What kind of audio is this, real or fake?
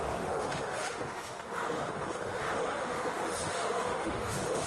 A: fake